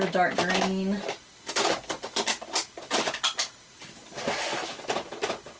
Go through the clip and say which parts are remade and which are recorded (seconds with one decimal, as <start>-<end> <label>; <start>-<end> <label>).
0.0-5.6 recorded